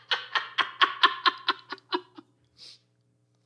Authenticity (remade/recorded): recorded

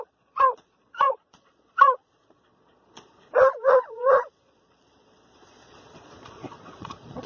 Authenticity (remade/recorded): remade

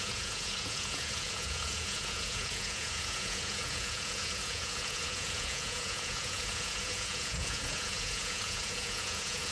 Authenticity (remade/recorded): remade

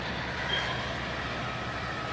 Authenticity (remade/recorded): recorded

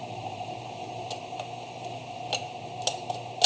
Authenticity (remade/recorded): recorded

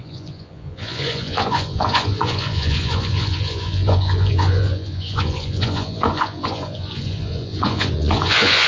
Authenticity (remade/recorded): remade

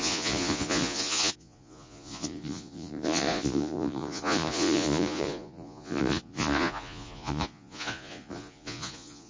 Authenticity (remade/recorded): remade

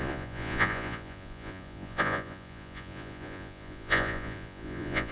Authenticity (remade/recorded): remade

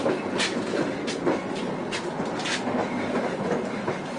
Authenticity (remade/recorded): recorded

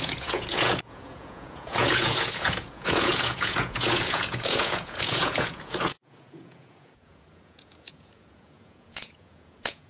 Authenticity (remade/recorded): remade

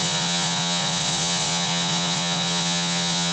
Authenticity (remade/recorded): remade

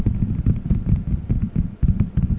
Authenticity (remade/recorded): recorded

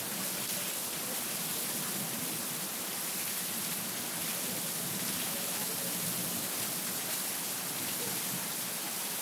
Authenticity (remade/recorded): recorded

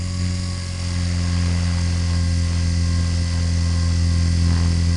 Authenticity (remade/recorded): recorded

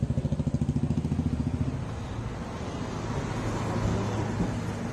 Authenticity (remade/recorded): recorded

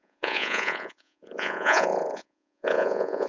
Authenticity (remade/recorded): remade